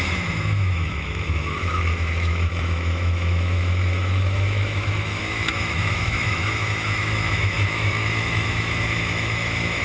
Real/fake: fake